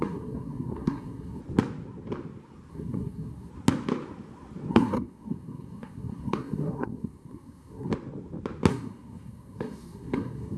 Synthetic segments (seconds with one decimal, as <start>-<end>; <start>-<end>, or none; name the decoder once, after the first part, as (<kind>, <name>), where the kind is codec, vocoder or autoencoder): 0.0-1.4 (codec, SNAC); 2.7-3.5; 4.7-7.9; 8.7-10.6